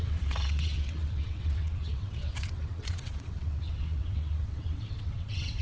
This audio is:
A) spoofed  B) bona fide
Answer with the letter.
A